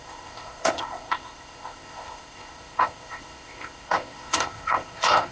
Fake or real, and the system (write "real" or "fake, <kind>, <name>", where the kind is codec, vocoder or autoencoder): fake, codec, ZipCodec